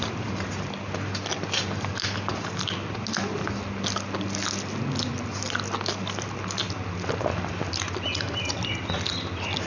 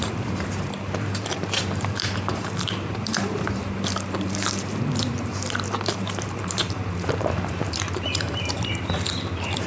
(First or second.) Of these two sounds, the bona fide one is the first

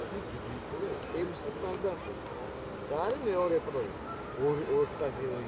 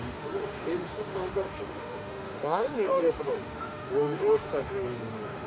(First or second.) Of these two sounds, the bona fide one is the first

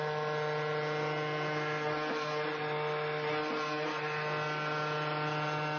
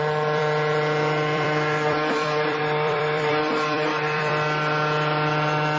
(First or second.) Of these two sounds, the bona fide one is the first